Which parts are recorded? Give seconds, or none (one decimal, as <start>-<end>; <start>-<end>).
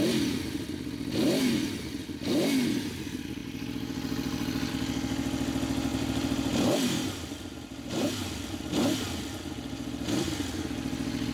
0.0-3.4; 4.7-5.9; 8.1-11.3